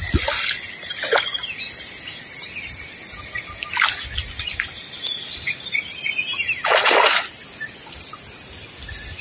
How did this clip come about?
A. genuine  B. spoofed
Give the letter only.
A